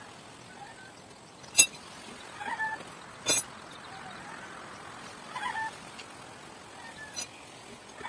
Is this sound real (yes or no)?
yes